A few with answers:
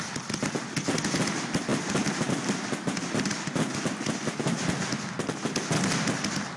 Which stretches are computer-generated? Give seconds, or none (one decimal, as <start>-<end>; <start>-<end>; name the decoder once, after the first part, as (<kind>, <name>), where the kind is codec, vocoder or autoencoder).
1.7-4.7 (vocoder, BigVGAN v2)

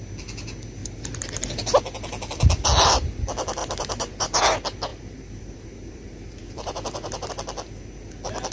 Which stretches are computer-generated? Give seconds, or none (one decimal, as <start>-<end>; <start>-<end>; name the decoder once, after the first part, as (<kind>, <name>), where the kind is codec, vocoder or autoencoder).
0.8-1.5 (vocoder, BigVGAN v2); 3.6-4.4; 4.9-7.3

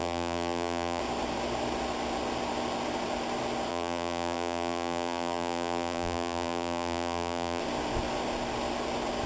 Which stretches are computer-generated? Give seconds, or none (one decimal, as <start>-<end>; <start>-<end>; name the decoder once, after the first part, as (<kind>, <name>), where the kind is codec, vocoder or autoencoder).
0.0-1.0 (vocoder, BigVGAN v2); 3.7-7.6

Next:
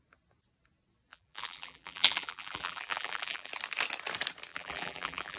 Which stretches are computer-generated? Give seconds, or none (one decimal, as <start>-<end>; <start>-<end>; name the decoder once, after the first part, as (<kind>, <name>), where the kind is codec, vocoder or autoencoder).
1.1-3.5 (vocoder, BigVGAN v2); 4.5-5.4

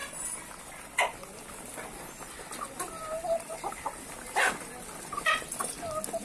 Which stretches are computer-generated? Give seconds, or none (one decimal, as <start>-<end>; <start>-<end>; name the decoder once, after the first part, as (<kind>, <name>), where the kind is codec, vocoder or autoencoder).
none

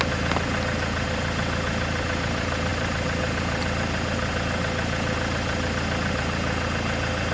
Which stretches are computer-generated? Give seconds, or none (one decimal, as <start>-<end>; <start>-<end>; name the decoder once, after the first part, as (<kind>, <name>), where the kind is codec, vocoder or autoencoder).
none